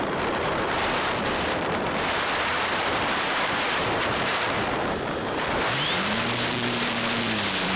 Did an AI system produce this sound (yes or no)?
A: yes